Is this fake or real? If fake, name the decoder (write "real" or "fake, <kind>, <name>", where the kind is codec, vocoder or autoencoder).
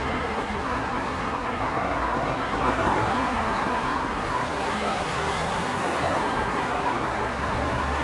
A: fake, codec, SNAC